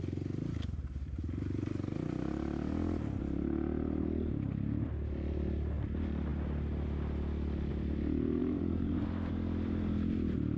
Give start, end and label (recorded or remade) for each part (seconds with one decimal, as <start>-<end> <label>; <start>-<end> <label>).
0.0-8.4 recorded; 8.4-9.3 remade; 9.3-10.6 recorded